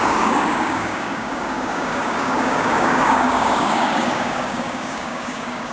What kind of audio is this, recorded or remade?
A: remade